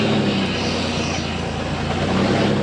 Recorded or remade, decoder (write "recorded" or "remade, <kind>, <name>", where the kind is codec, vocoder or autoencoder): recorded